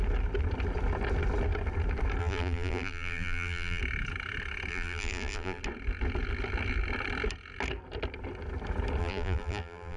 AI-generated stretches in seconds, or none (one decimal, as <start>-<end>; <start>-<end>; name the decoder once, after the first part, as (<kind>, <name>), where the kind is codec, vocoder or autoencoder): 2.2-3.8 (vocoder, BigVGAN v2); 4.7-5.6; 9.0-10.0